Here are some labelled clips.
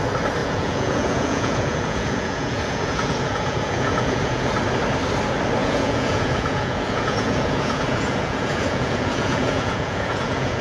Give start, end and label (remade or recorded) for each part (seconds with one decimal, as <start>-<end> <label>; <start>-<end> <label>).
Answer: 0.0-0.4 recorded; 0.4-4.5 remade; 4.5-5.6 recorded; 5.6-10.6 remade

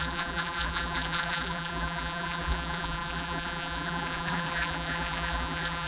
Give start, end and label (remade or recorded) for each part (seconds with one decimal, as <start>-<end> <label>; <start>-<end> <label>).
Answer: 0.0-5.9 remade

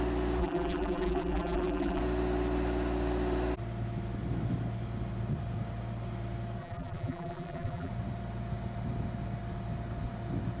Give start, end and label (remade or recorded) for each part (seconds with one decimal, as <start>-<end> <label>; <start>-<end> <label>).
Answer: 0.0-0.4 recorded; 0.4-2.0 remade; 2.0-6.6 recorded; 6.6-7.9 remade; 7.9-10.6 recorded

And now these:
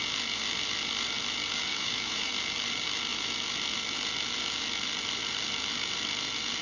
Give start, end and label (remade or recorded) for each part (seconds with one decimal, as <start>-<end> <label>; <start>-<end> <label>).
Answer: 0.0-1.7 recorded; 1.7-2.3 remade; 2.3-6.6 recorded

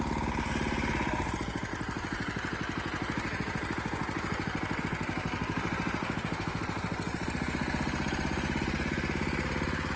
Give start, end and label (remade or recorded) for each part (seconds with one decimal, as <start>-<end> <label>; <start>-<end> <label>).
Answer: 0.0-6.0 recorded; 6.0-6.6 remade; 6.6-10.0 recorded